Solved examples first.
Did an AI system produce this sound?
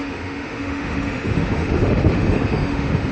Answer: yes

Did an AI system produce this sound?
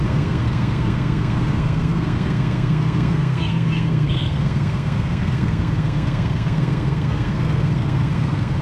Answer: yes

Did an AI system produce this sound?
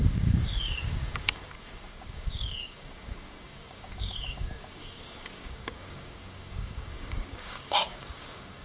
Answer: yes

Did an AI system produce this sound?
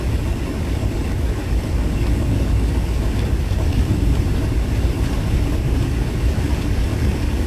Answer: yes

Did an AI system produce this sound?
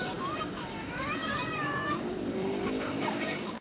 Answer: yes